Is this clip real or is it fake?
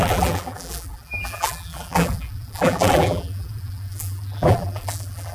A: fake